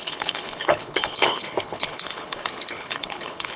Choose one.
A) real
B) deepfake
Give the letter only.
B